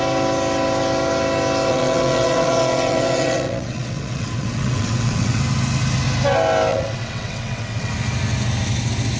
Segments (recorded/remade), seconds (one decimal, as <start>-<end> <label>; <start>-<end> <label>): 0.0-1.7 recorded; 1.7-5.4 remade; 5.4-6.7 recorded; 6.7-7.9 remade; 7.9-9.2 recorded